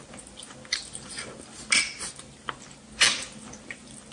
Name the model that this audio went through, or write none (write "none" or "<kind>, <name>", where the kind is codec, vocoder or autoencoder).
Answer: none